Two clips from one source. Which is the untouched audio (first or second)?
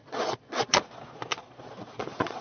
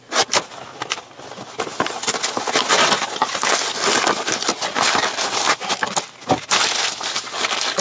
second